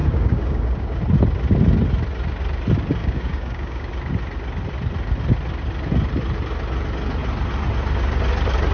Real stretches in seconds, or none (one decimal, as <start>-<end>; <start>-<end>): 1.0-3.0; 3.9-8.7